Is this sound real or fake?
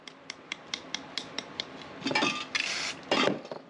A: real